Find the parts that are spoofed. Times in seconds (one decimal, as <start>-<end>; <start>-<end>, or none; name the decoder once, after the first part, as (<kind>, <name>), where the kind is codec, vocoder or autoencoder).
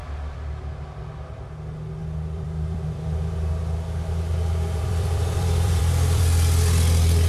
2.0-6.2 (vocoder, BigVGAN v2)